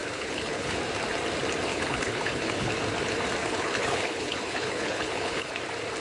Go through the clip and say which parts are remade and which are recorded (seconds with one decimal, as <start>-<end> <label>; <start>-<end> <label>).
0.0-0.8 remade; 0.8-1.7 recorded; 1.7-2.7 remade; 2.7-3.4 recorded; 3.4-5.5 remade; 5.5-6.0 recorded